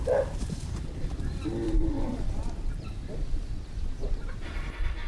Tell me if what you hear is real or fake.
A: fake